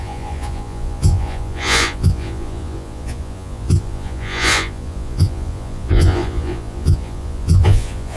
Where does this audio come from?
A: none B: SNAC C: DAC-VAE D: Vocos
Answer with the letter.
D